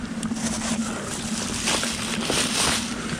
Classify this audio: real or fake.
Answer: fake